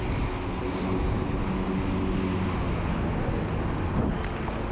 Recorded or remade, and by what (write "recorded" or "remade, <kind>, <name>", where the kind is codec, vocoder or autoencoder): recorded